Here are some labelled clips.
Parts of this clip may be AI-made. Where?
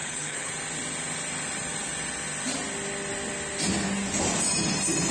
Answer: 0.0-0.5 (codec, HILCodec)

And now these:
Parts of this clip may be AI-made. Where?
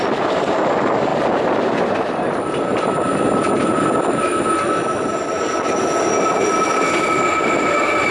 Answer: none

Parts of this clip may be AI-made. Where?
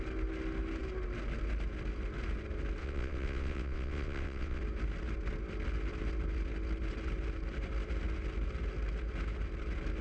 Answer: 2.8-4.6 (vocoder, WaveNeXt)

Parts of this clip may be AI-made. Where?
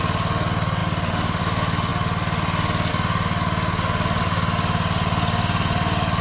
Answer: none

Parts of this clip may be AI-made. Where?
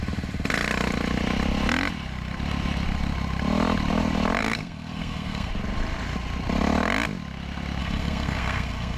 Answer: 4.4-5.5 (codec, SNAC); 7.8-9.0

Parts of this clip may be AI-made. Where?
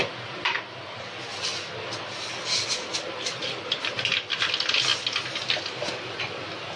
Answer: 2.9-3.4 (vocoder, BigVGAN v2); 4.9-6.2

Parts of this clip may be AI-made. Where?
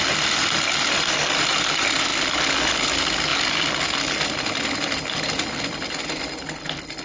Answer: 0.0-3.3 (vocoder, BigVGAN v2); 4.5-7.0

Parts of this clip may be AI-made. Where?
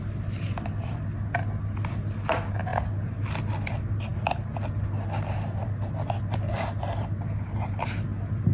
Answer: none